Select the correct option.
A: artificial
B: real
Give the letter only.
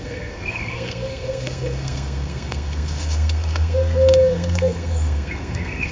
A